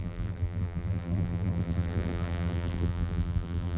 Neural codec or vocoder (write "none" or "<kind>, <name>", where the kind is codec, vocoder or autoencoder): vocoder, BigVGAN v2